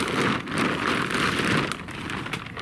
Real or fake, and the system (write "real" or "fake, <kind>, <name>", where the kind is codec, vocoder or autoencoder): real